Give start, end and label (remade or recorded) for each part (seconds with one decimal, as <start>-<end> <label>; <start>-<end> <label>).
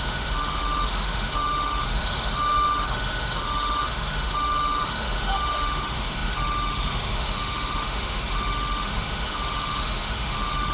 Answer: 0.0-10.7 remade